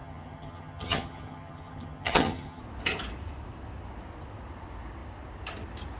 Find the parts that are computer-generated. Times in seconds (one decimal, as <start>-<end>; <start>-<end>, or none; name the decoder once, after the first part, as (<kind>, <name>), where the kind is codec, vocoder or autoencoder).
0.0-2.6 (vocoder, HiFi-GAN)